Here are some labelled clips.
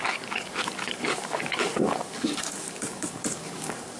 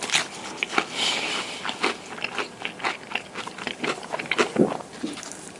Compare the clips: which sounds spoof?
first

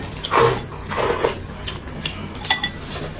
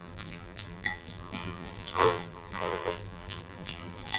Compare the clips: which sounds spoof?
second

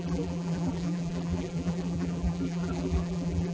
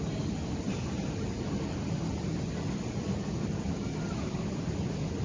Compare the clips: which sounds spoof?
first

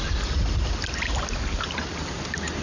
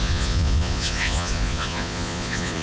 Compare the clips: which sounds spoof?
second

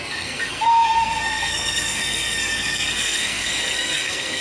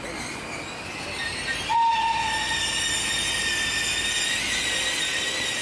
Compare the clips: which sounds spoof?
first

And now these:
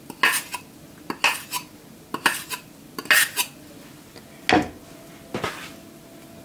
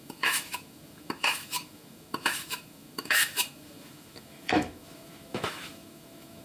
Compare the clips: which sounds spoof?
second